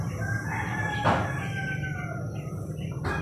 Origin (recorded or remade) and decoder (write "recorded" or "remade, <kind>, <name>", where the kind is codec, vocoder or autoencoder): recorded